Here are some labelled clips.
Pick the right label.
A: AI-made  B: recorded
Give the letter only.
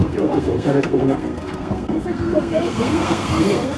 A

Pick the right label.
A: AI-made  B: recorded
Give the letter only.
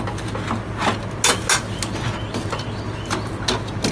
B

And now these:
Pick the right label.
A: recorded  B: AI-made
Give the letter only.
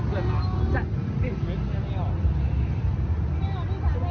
A